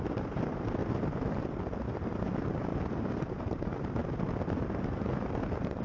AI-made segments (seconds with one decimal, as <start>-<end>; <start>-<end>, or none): 0.0-0.8; 2.2-4.0; 5.1-5.8